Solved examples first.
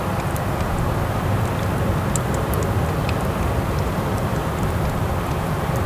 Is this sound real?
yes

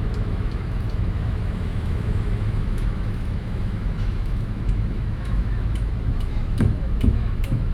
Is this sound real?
no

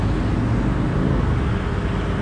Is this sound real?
yes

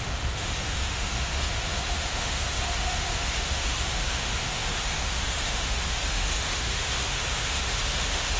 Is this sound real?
no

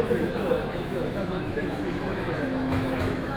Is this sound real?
no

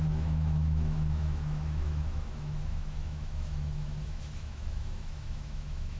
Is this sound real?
no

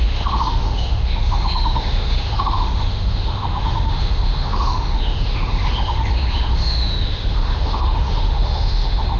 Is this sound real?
no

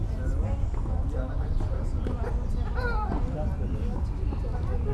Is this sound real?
yes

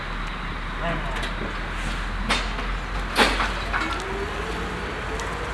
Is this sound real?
yes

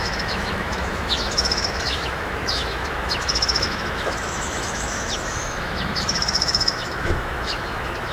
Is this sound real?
no